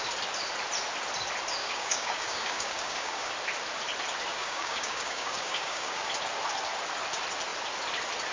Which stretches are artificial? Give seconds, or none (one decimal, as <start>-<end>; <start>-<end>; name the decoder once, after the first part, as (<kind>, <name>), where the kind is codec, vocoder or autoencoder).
1.6-3.3 (codec, DAC); 4.3-6.1